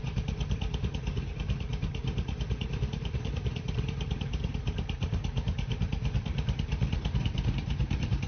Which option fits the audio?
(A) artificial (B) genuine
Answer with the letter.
A